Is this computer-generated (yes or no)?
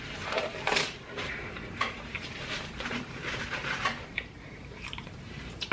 yes